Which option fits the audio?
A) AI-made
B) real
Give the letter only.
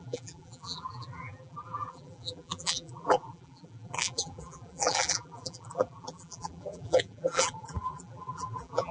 A